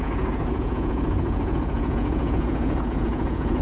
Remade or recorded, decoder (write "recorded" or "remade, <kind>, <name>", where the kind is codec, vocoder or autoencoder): remade, vocoder, Vocos